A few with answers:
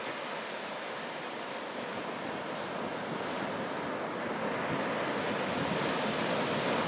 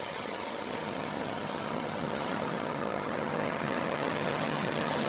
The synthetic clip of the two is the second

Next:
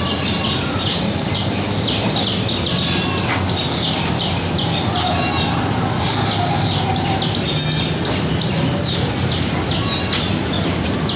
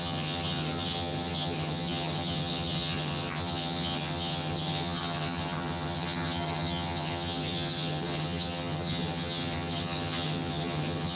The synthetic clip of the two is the second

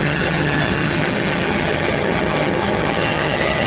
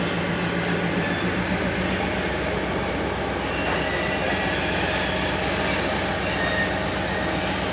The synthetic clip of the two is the first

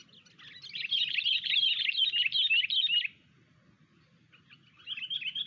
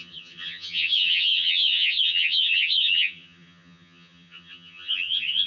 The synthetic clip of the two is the second